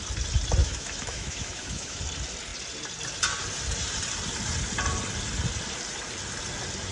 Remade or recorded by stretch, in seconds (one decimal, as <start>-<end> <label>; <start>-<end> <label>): 0.0-0.6 recorded; 0.6-2.0 remade; 2.0-6.9 recorded